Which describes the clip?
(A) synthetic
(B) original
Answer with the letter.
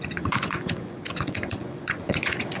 A